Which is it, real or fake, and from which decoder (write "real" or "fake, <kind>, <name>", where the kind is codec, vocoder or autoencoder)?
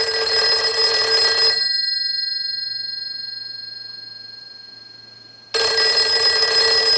real